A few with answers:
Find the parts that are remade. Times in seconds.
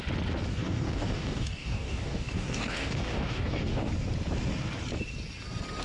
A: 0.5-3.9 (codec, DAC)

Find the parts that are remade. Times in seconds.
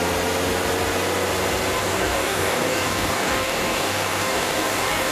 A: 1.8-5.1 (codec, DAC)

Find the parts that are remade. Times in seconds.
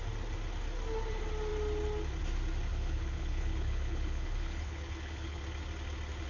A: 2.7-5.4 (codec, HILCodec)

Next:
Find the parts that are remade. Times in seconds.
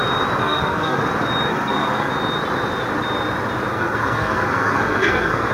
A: 0.4-1.0 (codec, SNAC); 1.5-2.1; 3.7-5.5